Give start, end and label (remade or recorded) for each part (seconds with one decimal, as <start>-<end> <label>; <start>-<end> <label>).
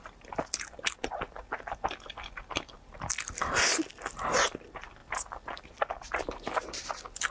0.0-5.0 recorded; 5.0-5.6 remade; 5.6-7.3 recorded